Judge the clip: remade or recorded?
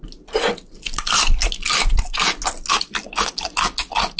recorded